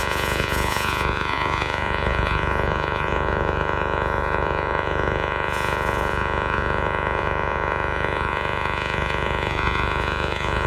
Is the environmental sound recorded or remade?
remade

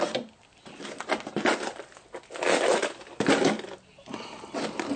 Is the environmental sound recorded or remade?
recorded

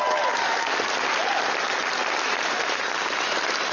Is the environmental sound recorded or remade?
recorded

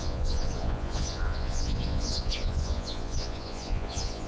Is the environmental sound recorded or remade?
remade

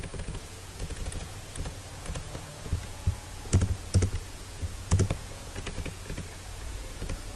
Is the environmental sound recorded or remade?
remade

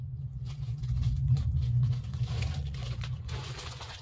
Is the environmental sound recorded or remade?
remade